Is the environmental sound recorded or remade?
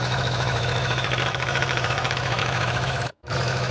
remade